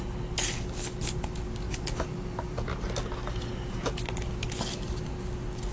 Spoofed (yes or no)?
no